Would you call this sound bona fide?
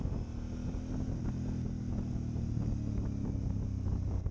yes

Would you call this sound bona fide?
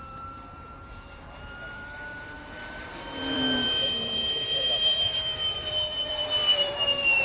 no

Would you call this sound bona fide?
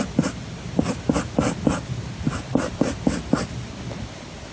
yes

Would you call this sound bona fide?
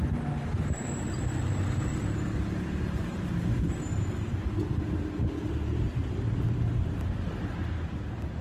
yes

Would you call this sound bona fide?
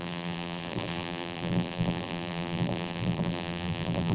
no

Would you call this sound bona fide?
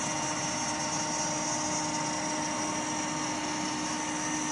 yes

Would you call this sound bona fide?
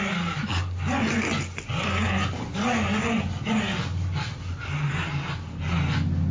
yes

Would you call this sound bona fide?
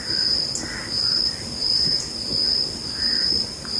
no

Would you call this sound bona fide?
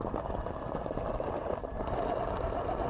yes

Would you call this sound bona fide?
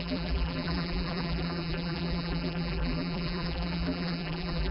no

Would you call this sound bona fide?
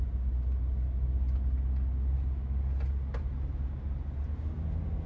yes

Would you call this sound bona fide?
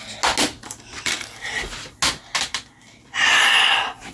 yes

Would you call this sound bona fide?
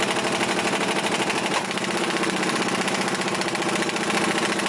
yes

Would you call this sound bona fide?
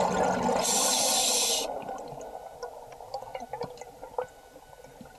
no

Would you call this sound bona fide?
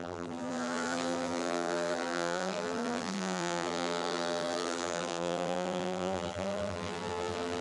no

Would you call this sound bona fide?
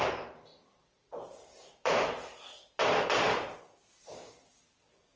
no